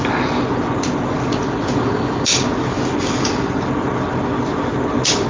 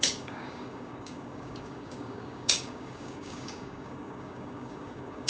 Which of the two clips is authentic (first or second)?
first